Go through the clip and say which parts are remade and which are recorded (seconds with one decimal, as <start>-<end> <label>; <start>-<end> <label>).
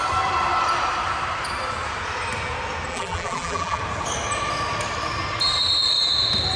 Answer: 0.0-2.9 recorded; 2.9-3.8 remade; 3.8-6.6 recorded